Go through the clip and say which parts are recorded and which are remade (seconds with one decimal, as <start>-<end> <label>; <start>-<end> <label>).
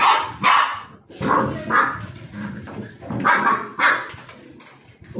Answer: 0.0-5.2 recorded